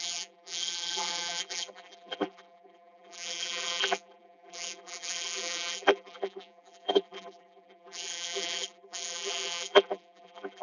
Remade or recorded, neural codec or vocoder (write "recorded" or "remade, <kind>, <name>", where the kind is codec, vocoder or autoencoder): remade, vocoder, BigVGAN v2